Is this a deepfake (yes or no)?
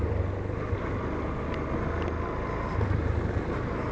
no